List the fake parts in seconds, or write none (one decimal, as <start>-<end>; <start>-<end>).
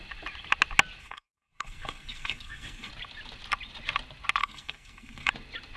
1.0-2.9; 4.4-5.3